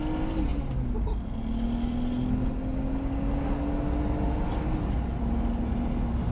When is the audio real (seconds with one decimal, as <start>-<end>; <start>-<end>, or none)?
0.0-6.3